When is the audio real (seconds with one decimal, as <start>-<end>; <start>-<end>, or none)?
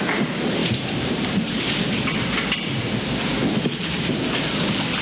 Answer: 0.0-0.6; 1.7-5.0